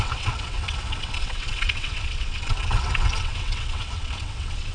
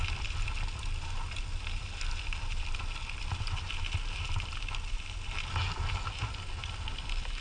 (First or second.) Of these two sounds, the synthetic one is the first